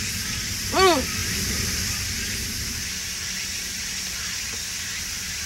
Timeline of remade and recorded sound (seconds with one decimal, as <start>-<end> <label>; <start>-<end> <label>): 0.0-5.5 recorded